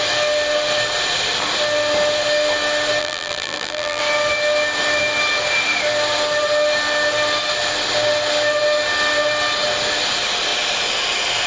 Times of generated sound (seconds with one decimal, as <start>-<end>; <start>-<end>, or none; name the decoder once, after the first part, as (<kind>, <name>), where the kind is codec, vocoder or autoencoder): 3.0-4.0 (vocoder, BigVGAN v2)